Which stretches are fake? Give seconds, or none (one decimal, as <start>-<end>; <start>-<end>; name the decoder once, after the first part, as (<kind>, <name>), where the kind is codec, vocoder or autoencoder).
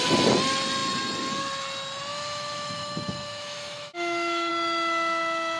2.1-4.5 (autoencoder, DAC-VAE)